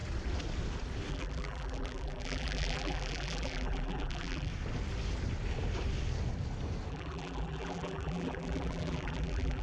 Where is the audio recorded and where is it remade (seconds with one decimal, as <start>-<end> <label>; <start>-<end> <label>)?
0.0-1.1 recorded; 1.1-4.5 remade; 4.5-6.9 recorded; 6.9-9.6 remade